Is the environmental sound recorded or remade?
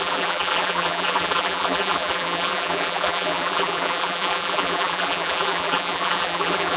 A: remade